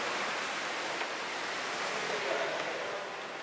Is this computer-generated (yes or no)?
yes